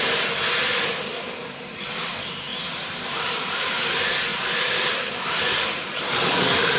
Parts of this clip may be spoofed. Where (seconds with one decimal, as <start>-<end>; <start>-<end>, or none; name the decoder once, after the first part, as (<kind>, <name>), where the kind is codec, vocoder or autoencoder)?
1.1-1.8 (vocoder, BigVGAN v2); 2.5-3.6